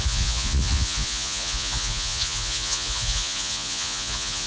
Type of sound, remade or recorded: remade